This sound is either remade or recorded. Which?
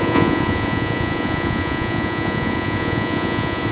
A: remade